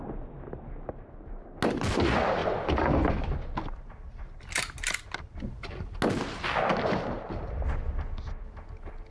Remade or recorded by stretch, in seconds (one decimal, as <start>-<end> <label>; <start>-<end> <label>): 0.0-9.1 recorded